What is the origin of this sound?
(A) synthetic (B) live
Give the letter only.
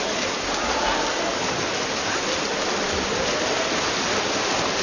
B